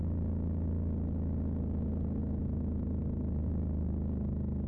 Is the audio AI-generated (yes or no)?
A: no